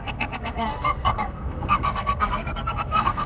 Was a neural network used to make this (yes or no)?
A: yes